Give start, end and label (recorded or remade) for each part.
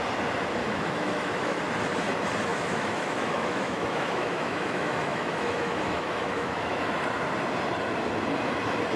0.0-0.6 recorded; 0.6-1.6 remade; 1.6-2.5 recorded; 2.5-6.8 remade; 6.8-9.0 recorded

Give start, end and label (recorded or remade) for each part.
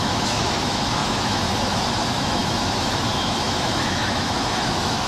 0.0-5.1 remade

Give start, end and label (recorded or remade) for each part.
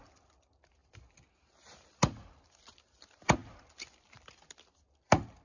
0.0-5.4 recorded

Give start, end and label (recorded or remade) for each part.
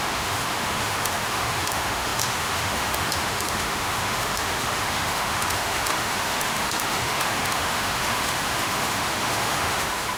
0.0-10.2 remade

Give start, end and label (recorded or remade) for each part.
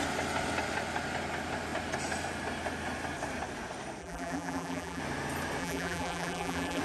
0.0-4.0 recorded; 4.0-5.0 remade; 5.0-5.6 recorded; 5.6-6.8 remade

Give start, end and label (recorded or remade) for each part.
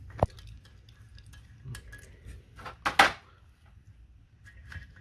0.0-5.0 recorded